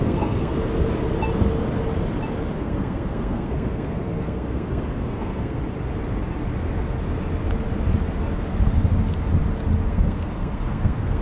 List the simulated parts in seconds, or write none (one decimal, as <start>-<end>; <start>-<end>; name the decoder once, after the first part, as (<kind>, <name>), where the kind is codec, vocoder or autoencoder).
0.0-0.5 (codec, SNAC); 2.6-5.6; 9.9-11.2